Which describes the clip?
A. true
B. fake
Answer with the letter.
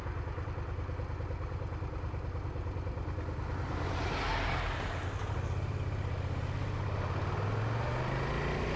A